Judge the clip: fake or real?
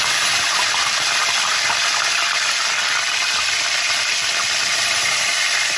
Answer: real